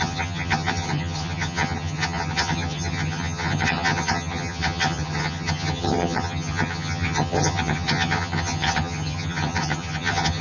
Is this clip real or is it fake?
fake